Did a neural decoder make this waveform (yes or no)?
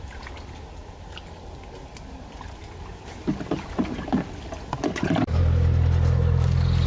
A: no